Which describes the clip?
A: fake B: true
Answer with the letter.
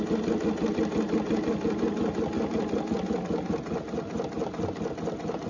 B